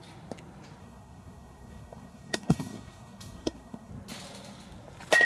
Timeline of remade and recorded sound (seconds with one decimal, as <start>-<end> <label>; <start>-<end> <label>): 0.0-0.8 recorded; 0.8-3.9 remade; 3.9-5.2 recorded